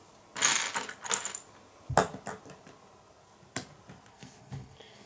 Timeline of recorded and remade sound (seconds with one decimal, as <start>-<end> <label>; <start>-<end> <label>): 0.0-4.1 recorded; 4.1-5.1 remade